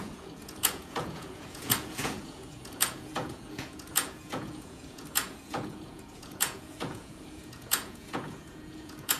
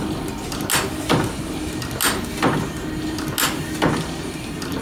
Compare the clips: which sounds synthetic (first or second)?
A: first